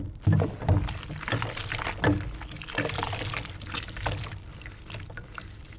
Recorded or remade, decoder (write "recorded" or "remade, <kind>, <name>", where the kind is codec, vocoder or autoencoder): recorded